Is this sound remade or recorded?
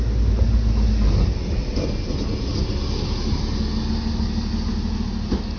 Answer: recorded